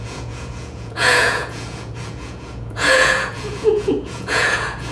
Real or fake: fake